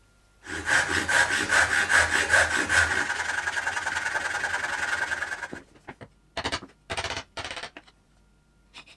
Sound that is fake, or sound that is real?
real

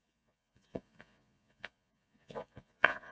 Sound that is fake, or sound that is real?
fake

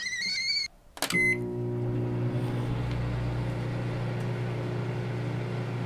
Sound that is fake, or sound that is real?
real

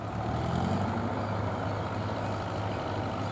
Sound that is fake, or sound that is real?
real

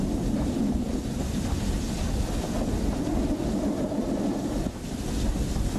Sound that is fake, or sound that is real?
real